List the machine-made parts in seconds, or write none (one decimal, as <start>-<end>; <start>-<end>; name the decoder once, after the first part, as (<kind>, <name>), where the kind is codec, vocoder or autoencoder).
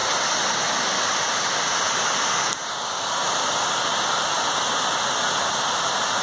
none